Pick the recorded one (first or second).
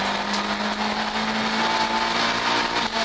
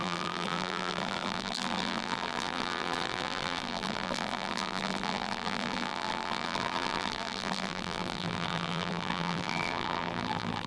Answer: first